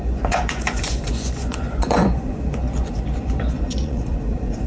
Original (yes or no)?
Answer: no